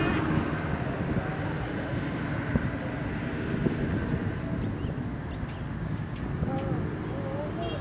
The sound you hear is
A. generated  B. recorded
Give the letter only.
B